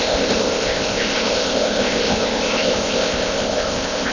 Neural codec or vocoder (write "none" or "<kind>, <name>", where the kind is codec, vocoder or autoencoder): codec, ZipCodec